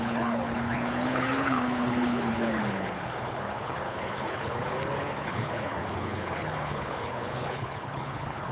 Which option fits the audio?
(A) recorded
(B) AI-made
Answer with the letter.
B